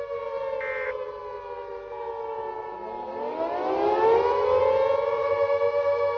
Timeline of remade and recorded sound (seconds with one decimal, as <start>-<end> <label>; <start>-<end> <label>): 0.0-5.2 recorded; 5.2-6.2 remade